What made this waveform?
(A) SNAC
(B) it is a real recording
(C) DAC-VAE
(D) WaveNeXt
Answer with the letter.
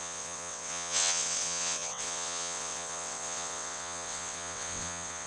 D